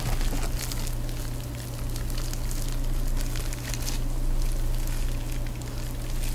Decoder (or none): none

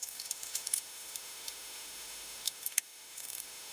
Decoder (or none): autoencoder, DAC-VAE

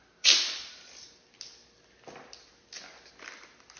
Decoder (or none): none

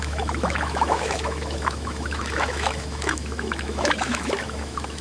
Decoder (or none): autoencoder, DAC-VAE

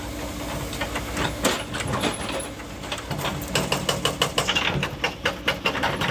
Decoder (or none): none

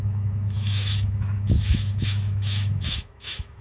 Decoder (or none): autoencoder, DAC-VAE